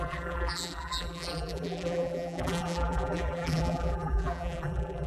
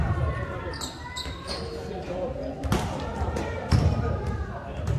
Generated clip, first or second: first